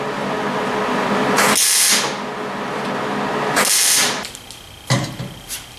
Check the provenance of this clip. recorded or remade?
recorded